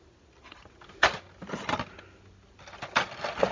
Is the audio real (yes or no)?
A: yes